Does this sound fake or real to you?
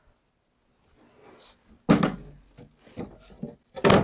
real